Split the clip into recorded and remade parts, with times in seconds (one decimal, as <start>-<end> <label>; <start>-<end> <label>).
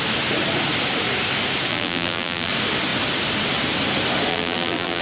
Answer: 0.0-1.7 recorded; 1.7-2.5 remade; 2.5-4.3 recorded; 4.3-5.0 remade